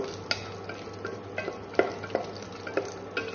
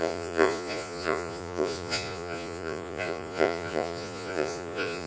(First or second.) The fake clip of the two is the second